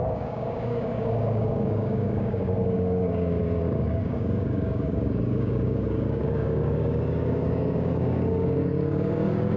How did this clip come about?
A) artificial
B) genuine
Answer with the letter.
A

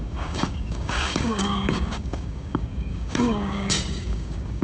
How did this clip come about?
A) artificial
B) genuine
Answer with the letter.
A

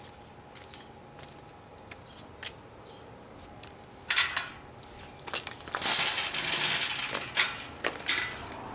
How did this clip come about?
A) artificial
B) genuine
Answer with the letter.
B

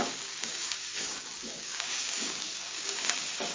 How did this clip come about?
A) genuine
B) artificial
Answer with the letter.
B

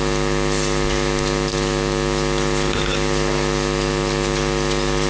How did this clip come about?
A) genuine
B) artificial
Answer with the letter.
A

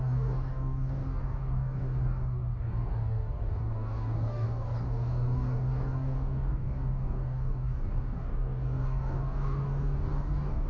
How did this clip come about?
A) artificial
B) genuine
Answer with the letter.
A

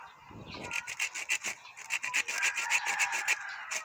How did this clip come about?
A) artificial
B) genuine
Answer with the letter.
B